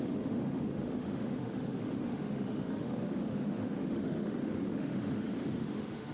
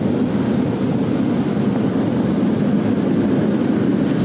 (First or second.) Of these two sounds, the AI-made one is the first